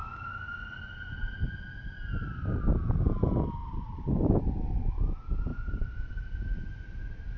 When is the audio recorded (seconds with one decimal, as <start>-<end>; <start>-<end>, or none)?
0.0-3.6; 4.4-5.5; 6.1-7.4

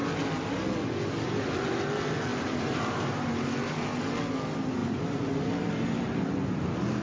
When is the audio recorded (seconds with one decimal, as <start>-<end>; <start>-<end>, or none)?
0.0-2.3; 3.3-4.8; 6.2-7.0

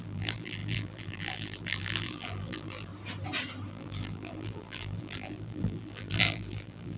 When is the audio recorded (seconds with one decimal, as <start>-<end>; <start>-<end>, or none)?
2.9-3.7